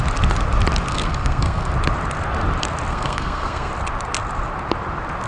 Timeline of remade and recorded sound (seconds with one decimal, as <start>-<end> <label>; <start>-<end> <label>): 0.0-0.9 recorded; 0.9-1.7 remade; 1.7-2.9 recorded; 2.9-3.7 remade; 3.7-5.3 recorded